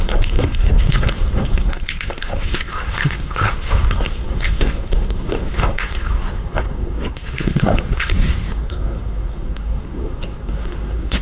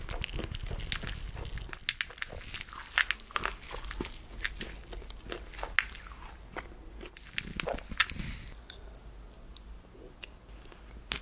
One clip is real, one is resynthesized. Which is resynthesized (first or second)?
first